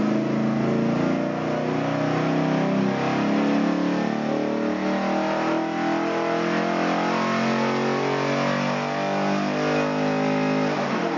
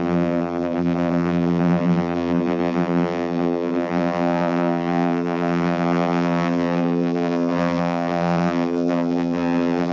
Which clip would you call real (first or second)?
first